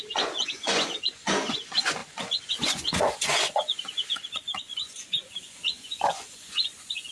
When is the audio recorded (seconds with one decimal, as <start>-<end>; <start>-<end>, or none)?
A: none